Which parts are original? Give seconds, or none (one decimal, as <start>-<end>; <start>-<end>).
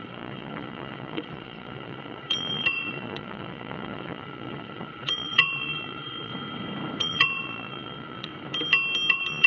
6.3-7.0; 8.3-9.1